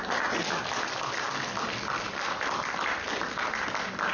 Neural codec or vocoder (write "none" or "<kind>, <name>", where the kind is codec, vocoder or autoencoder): none